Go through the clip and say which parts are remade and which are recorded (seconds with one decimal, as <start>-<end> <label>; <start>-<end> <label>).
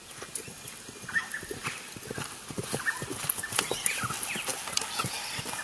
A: 0.0-5.6 recorded